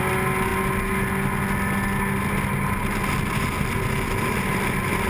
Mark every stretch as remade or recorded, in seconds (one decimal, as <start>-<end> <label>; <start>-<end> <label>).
0.0-5.1 recorded